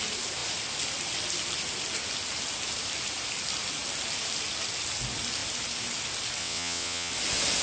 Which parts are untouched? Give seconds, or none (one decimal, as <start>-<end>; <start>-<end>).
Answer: 0.0-6.4; 7.1-7.6

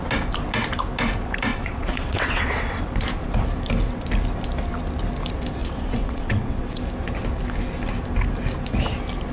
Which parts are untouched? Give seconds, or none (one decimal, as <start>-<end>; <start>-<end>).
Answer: 0.0-1.5; 2.8-5.6; 6.8-9.3

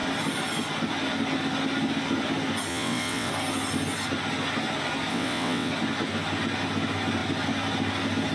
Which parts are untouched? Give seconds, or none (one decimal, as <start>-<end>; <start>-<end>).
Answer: 0.0-2.7; 3.3-5.1; 5.7-8.3

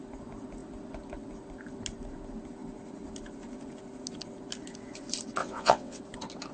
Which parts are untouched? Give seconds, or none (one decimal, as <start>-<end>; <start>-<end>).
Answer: 0.0-5.4; 6.0-6.5

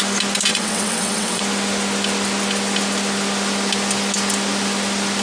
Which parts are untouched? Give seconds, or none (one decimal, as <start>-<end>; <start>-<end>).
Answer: 0.0-0.5; 1.4-5.2

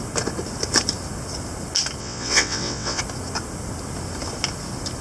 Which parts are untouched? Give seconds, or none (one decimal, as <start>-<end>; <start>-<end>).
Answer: 0.0-2.0; 3.0-5.0